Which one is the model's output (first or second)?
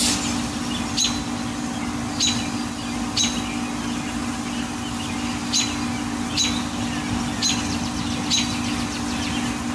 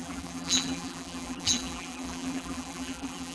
second